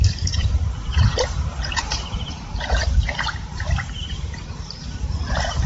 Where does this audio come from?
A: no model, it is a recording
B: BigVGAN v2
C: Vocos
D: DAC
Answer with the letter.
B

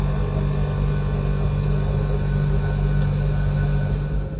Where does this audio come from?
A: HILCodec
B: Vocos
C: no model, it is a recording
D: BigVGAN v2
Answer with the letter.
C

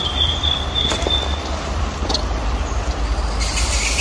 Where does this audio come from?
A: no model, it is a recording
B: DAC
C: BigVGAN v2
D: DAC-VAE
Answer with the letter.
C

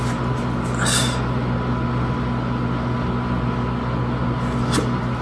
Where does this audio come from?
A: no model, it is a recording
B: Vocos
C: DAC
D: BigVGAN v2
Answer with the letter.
A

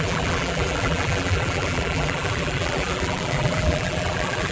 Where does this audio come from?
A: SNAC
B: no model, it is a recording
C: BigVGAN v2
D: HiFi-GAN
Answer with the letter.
C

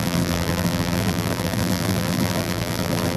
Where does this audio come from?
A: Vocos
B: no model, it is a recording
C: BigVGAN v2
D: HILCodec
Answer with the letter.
C